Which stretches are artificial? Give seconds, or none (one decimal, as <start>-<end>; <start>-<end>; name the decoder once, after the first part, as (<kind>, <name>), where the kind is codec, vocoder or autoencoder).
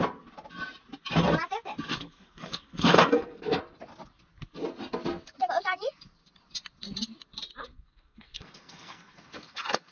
1.9-3.6 (codec, SNAC); 7.6-9.9